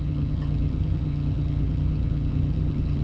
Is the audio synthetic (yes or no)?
yes